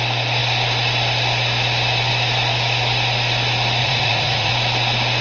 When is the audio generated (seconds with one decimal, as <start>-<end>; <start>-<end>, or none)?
3.8-4.5